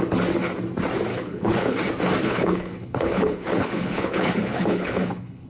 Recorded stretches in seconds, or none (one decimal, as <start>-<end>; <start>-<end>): 0.0-1.1; 1.8-2.2

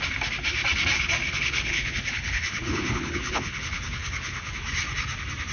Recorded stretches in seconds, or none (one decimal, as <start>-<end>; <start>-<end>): 0.0-1.2; 4.5-5.5

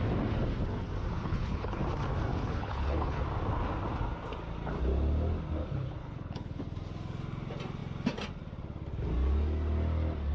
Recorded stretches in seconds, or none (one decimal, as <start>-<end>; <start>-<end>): 0.0-1.1; 1.8-2.3; 3.2-5.6; 6.6-10.3

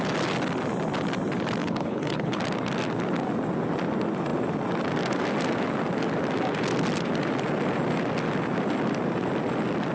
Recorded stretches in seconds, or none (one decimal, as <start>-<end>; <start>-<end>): 0.0-1.6; 2.4-9.9